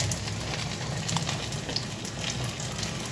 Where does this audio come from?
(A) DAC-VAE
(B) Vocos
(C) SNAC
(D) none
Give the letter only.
D